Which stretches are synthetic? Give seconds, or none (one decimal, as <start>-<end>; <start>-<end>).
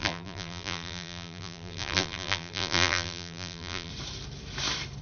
0.0-3.9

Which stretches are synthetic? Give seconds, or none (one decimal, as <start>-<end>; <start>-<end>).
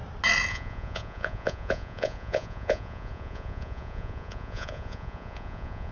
0.5-5.9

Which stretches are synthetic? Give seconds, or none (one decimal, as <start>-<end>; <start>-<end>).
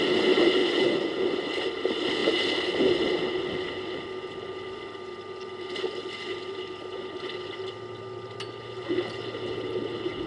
0.6-1.3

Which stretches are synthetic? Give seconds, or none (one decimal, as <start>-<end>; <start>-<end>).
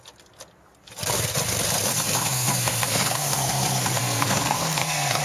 1.9-5.2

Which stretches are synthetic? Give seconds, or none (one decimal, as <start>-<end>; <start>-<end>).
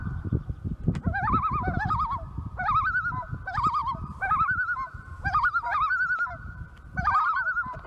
none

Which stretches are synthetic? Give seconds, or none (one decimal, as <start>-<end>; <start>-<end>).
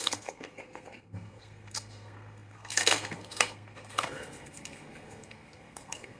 0.0-6.2